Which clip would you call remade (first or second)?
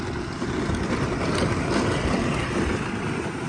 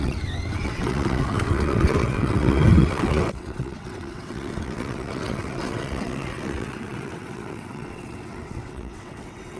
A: second